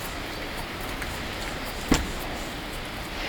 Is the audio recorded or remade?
recorded